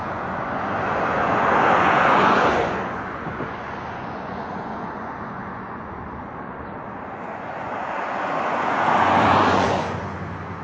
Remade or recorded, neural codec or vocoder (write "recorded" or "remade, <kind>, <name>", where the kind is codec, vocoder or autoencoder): remade, vocoder, Vocos